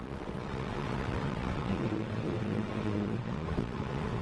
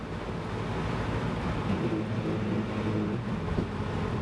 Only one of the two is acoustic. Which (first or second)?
second